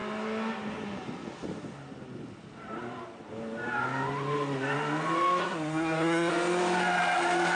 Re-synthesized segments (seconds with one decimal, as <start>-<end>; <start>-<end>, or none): 5.4-6.3